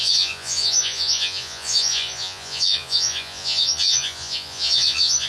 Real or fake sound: fake